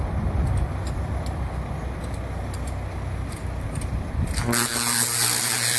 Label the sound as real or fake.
real